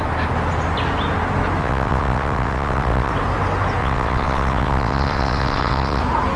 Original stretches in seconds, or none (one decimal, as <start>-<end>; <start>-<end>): 0.0-1.6; 3.1-3.8; 6.0-6.4